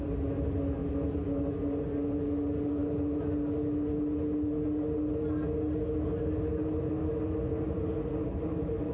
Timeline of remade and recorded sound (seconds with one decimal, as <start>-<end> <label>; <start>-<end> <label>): 0.0-8.9 recorded

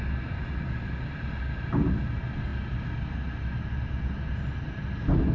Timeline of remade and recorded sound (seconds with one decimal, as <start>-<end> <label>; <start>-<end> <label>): 0.0-5.3 recorded

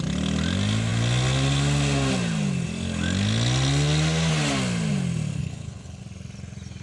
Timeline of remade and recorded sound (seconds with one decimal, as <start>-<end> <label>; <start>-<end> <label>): 0.0-5.4 recorded; 5.4-6.0 remade; 6.0-6.8 recorded

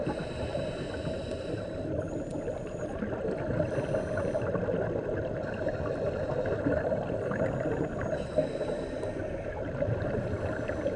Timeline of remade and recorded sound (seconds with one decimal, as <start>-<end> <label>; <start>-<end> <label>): 0.0-11.0 recorded

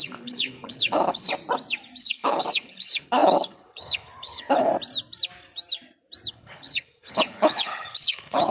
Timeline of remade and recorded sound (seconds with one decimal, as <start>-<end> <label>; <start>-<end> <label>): 0.0-1.3 remade; 1.3-2.0 recorded; 2.0-4.7 remade; 4.7-6.3 recorded; 6.3-8.5 remade

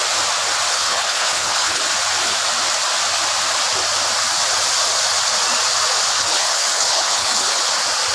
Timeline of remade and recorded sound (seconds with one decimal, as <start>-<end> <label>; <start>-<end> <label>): 0.0-0.7 recorded; 0.7-1.8 remade; 1.8-6.1 recorded; 6.1-7.6 remade; 7.6-8.1 recorded

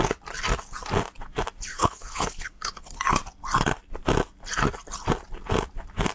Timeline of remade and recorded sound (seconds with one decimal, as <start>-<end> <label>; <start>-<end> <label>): 0.0-1.7 recorded; 1.7-3.0 remade; 3.0-6.1 recorded

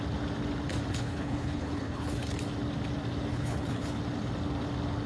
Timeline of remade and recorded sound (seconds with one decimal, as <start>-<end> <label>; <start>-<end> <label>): 0.0-0.9 recorded; 0.9-2.3 remade; 2.3-3.3 recorded; 3.3-4.0 remade; 4.0-5.1 recorded